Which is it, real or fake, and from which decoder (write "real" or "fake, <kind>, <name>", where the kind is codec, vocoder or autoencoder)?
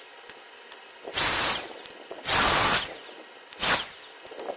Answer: fake, vocoder, BigVGAN v2